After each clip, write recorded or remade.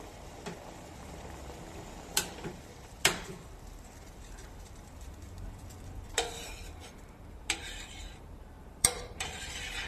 remade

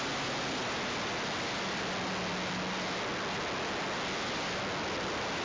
recorded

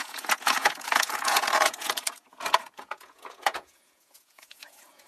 remade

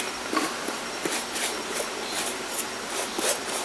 recorded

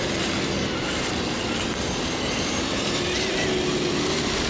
remade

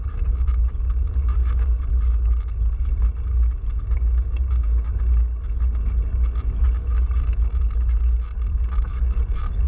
recorded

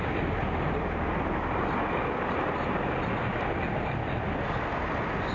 recorded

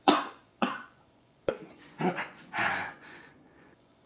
remade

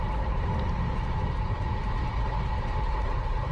recorded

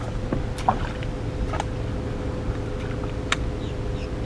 recorded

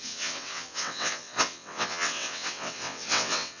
remade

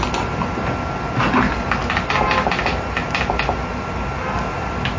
recorded